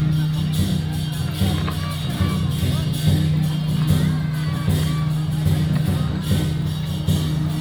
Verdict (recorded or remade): recorded